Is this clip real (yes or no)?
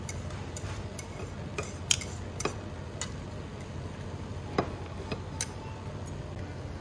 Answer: yes